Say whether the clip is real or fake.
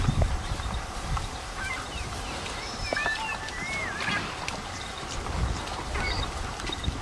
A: fake